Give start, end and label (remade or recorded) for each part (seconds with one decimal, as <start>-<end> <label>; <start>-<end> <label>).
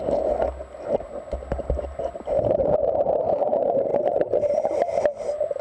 0.0-5.6 recorded